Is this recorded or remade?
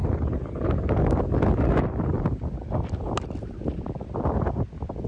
recorded